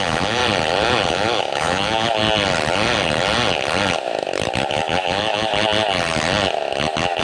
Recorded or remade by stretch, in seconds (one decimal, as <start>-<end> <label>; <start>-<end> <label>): 0.0-0.4 remade; 0.4-1.1 recorded; 1.1-2.2 remade; 2.2-4.7 recorded; 4.7-5.5 remade; 5.5-7.2 recorded